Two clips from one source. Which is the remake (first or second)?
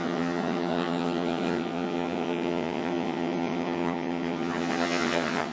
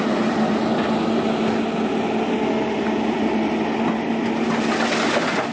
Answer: first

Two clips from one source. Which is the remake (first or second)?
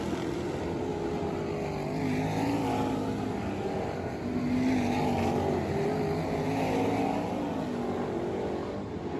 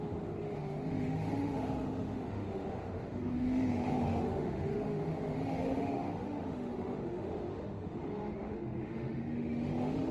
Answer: second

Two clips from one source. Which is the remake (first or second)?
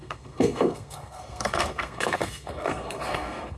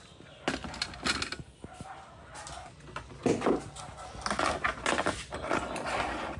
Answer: first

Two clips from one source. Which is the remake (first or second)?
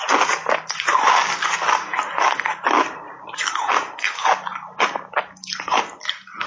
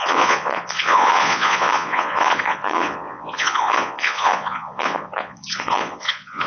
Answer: second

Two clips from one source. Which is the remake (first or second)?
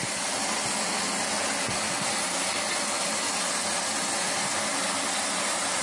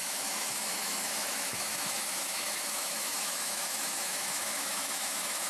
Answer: second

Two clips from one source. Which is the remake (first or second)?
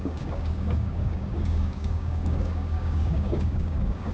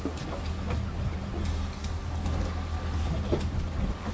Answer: first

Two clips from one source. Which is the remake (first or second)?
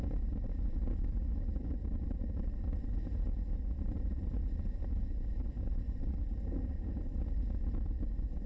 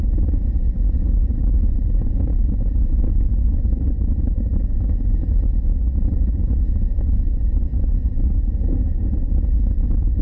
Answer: second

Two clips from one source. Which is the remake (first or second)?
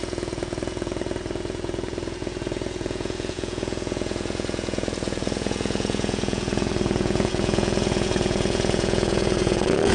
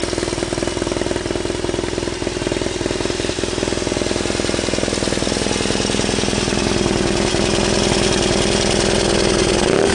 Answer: first